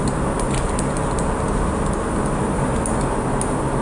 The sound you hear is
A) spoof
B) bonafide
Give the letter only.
B